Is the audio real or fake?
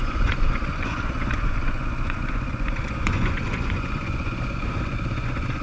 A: fake